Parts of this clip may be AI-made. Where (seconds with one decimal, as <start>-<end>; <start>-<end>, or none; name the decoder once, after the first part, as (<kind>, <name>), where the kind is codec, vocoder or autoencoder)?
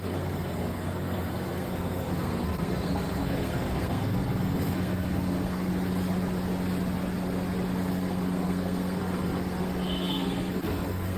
0.0-5.7 (codec, SNAC); 7.9-11.2